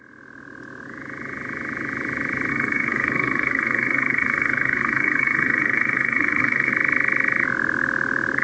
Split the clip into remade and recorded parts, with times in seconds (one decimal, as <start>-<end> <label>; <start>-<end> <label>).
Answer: 0.0-2.5 recorded; 2.5-6.7 remade; 6.7-8.4 recorded